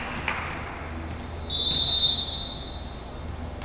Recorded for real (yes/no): yes